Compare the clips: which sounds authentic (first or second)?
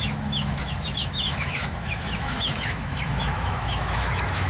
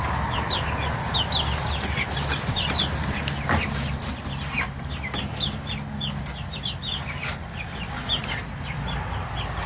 second